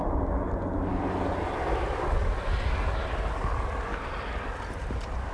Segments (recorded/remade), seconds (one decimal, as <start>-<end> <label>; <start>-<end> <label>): 0.0-3.9 recorded; 3.9-4.5 remade; 4.5-5.3 recorded